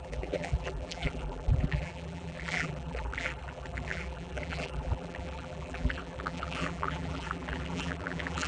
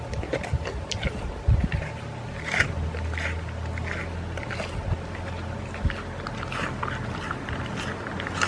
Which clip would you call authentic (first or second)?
second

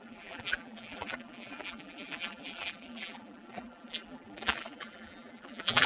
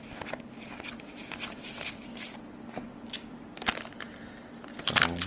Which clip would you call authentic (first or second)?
second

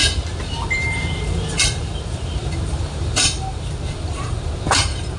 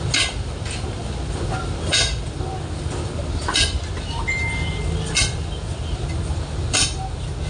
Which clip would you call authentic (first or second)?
second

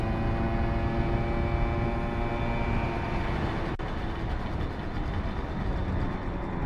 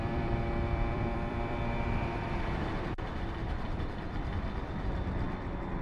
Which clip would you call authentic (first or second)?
first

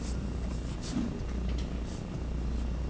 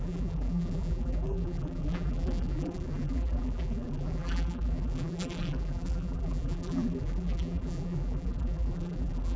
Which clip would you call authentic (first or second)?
first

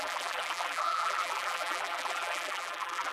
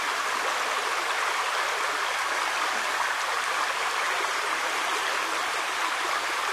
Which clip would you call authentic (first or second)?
second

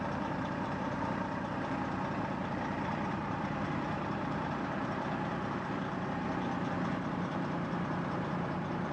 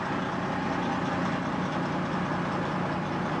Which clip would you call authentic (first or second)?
second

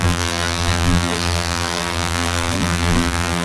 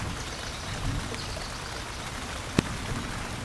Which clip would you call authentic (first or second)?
second